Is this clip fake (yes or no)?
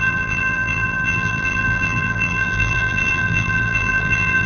yes